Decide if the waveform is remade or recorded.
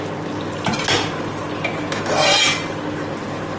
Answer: recorded